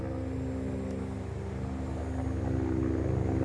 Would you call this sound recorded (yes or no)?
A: yes